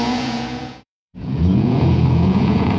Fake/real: fake